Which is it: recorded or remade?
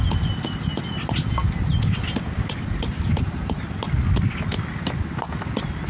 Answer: recorded